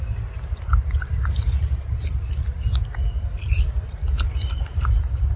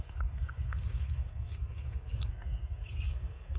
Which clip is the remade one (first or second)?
second